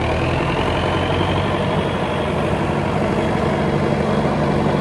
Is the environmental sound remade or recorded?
recorded